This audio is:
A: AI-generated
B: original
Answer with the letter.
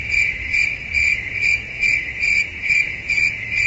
A